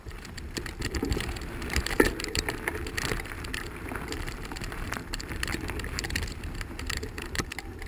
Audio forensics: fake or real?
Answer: fake